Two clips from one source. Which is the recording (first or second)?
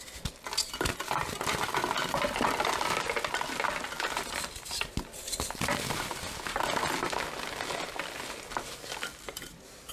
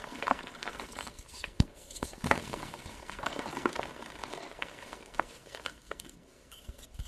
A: first